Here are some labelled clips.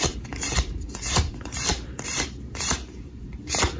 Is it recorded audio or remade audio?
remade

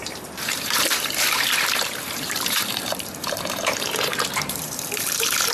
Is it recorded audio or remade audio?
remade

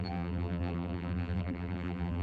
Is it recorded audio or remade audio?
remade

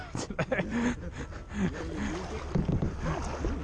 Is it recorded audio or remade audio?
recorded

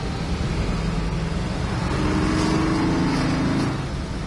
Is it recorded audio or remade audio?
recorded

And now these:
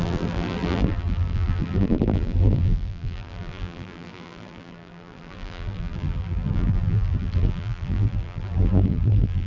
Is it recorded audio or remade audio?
remade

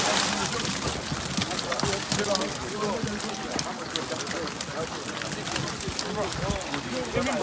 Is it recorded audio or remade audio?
recorded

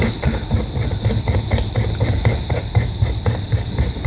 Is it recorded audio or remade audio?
remade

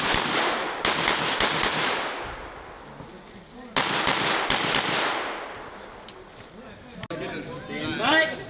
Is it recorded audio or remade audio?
recorded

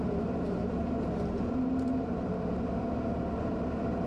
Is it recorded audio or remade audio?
remade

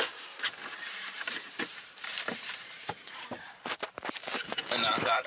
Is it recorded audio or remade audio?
remade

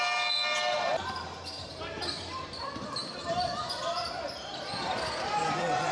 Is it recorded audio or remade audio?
remade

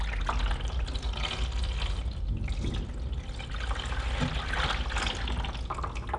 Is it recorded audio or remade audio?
recorded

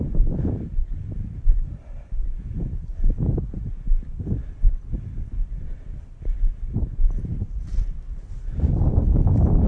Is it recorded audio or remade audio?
remade